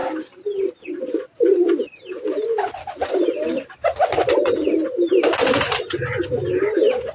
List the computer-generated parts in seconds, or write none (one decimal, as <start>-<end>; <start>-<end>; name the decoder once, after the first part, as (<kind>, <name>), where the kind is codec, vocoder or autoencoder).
none